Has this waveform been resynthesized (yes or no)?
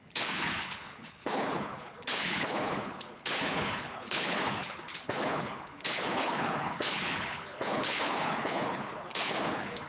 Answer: yes